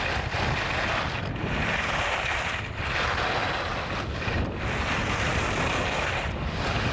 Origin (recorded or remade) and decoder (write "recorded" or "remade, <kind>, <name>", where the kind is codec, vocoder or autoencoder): recorded